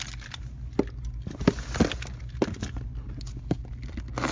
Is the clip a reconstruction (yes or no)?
no